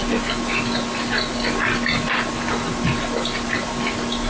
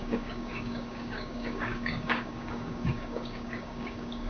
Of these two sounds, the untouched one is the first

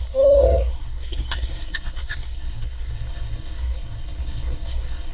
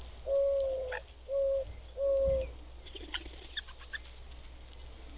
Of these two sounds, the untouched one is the second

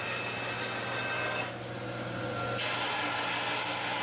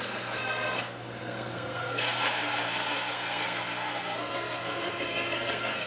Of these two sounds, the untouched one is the first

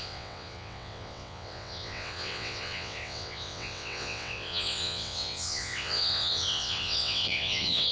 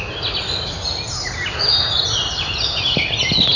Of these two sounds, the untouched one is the second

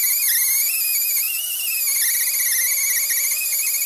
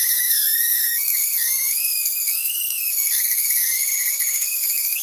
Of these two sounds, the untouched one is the first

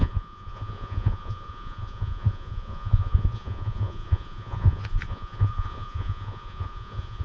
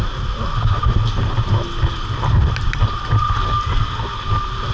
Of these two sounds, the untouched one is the second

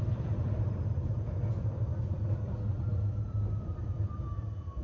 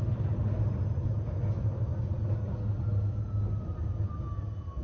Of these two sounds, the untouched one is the second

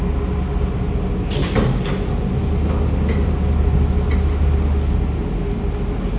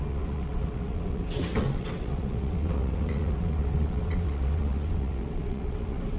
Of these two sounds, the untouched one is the first